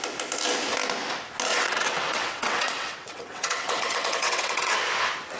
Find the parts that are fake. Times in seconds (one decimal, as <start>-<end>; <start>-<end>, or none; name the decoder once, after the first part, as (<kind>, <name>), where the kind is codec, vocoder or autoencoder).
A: 1.5-4.7 (vocoder, WaveNeXt)